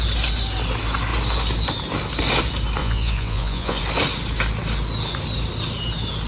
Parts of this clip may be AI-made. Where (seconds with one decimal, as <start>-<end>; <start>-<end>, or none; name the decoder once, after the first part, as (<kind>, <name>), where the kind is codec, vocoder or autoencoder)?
2.8-3.8 (vocoder, Vocos)